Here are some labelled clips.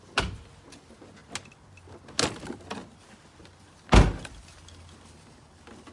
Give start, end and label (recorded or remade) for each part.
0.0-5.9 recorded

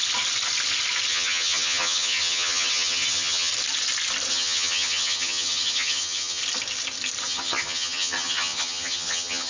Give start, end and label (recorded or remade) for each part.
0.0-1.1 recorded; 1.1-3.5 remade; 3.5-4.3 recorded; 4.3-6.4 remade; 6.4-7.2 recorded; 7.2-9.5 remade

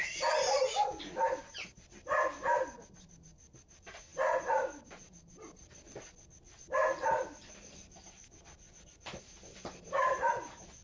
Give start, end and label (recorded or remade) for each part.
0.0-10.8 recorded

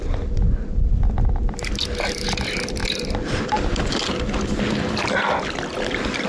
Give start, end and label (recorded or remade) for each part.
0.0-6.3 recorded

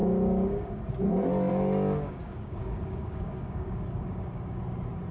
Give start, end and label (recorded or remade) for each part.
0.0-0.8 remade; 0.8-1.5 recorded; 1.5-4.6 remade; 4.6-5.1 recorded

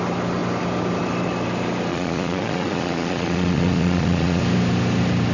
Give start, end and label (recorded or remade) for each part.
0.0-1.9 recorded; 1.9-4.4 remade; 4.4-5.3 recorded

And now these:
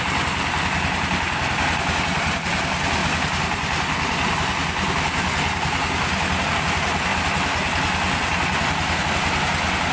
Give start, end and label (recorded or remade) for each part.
0.0-9.9 recorded